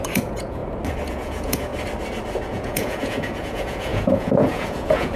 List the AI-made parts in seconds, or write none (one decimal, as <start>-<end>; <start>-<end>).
0.0-0.6; 1.1-1.7; 2.5-5.2